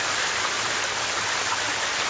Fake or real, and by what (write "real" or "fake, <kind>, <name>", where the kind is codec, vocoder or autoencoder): real